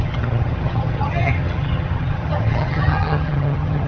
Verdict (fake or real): fake